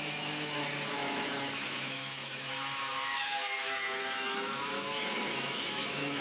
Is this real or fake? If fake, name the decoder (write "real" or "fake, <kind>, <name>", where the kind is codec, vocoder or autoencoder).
fake, autoencoder, DAC-VAE